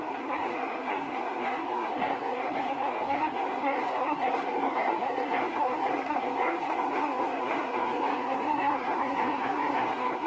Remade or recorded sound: remade